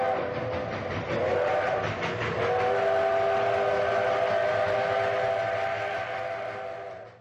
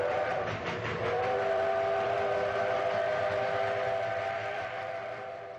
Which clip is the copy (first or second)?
second